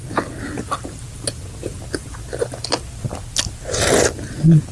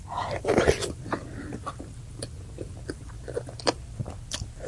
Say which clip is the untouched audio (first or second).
first